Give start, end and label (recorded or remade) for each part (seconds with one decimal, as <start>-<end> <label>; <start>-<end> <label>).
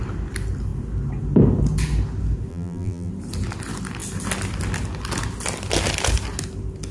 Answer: 0.0-2.5 recorded; 2.5-3.1 remade; 3.1-6.9 recorded